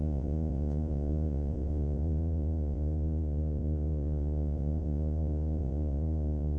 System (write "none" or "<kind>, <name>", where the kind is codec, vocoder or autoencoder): vocoder, Vocos